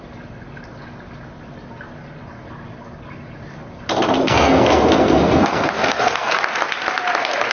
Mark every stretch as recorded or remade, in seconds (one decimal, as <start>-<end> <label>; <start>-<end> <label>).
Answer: 0.0-4.2 recorded; 4.2-6.4 remade; 6.4-7.5 recorded

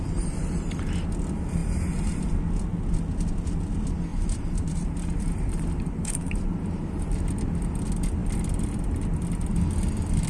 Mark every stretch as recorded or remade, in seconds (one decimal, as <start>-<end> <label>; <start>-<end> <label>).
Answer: 0.0-4.1 recorded; 4.1-7.2 remade; 7.2-10.3 recorded

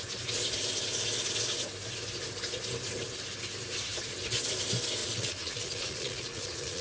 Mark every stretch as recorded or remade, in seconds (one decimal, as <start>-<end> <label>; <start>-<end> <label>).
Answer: 0.0-5.0 recorded; 5.0-6.8 remade